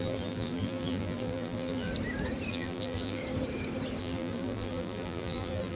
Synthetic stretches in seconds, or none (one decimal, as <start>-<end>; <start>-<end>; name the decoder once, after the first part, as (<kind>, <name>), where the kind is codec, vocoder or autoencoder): 0.0-1.9 (vocoder, BigVGAN v2); 2.5-3.2; 4.0-5.8